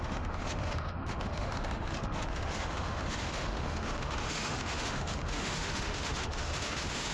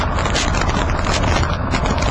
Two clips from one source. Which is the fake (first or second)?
first